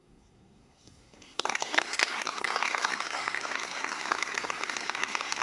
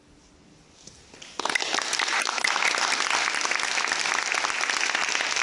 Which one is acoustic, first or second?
second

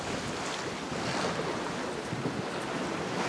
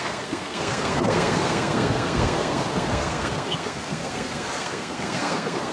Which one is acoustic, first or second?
first